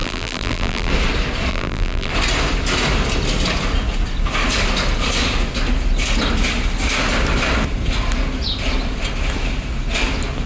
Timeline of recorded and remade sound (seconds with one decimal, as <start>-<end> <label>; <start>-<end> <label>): 0.0-0.9 remade; 0.9-1.5 recorded; 1.5-2.1 remade; 2.1-10.5 recorded

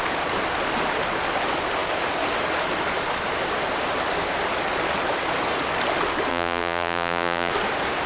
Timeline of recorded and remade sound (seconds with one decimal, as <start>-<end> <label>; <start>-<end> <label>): 0.0-6.3 recorded; 6.3-7.5 remade; 7.5-8.1 recorded

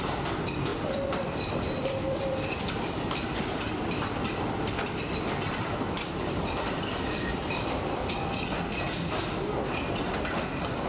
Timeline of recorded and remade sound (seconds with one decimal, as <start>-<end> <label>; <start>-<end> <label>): 0.0-8.0 remade; 8.0-10.9 recorded

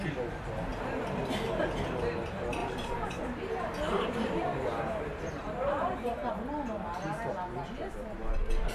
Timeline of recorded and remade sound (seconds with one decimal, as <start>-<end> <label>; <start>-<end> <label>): 0.0-0.7 recorded; 0.7-1.2 remade; 1.2-2.6 recorded; 2.6-6.3 remade; 6.3-8.7 recorded